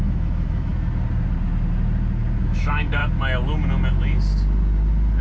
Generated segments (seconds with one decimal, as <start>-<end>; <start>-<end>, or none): 0.0-0.7; 2.4-3.0